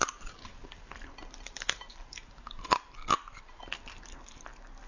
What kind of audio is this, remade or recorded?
recorded